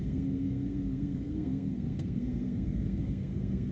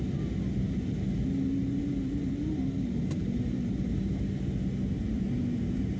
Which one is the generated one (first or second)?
first